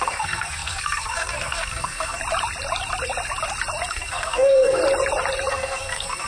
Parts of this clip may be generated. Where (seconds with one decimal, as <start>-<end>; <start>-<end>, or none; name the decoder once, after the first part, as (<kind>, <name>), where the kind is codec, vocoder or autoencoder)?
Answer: 0.0-2.2 (codec, SNAC); 3.9-4.8; 5.5-6.3